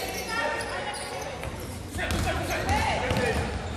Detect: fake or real real